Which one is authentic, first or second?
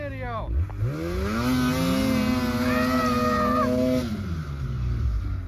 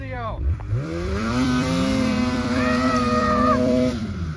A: first